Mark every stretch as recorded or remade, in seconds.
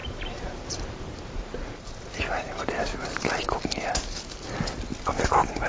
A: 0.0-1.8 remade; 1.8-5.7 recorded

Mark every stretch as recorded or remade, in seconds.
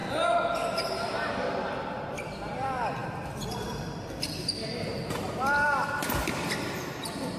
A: 0.0-1.7 recorded; 1.7-7.4 remade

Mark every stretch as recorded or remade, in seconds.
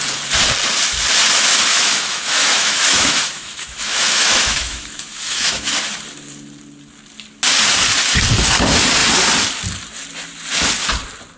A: 0.0-1.7 recorded; 1.7-5.7 remade; 5.7-11.4 recorded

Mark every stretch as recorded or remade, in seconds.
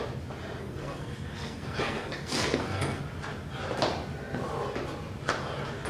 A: 0.0-0.6 recorded; 0.6-3.0 remade; 3.0-5.9 recorded